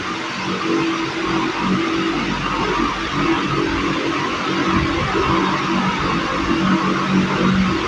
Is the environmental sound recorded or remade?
recorded